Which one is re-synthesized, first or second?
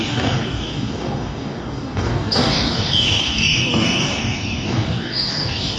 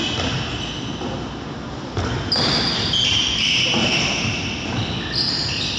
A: first